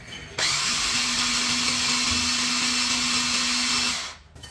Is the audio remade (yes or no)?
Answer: no